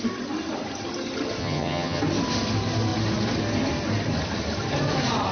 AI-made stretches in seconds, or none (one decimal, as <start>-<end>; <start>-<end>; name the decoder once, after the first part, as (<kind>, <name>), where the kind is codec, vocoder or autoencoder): 1.4-2.0 (vocoder, HiFi-GAN)